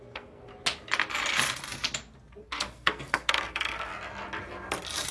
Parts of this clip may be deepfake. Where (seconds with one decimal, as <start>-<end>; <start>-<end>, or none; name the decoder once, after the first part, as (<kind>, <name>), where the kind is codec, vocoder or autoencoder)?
0.0-0.5 (codec, SNAC); 2.4-3.9